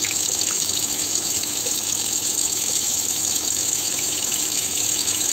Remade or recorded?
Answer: remade